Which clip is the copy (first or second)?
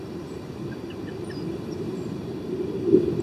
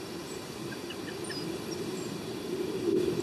first